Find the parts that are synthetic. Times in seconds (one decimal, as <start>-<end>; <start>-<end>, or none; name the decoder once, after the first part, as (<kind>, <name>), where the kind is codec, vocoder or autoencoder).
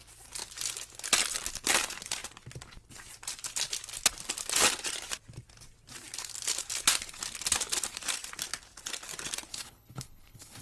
9.5-10.6 (codec, HILCodec)